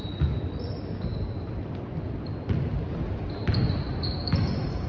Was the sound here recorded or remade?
recorded